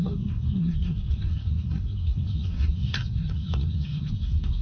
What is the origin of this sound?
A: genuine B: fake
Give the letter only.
B